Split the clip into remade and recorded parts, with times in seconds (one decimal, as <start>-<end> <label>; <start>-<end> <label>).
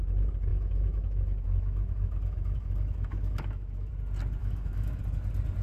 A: 0.0-0.5 recorded; 0.5-3.9 remade; 3.9-4.4 recorded; 4.4-5.0 remade; 5.0-5.6 recorded